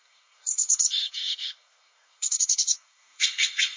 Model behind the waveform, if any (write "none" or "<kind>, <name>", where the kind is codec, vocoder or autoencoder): codec, SNAC